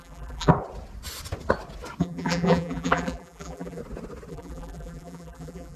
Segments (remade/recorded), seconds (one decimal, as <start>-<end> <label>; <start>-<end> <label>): 0.0-0.5 remade; 0.5-2.0 recorded; 2.0-3.8 remade; 3.8-4.3 recorded; 4.3-5.8 remade